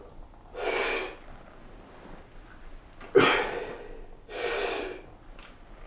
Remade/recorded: recorded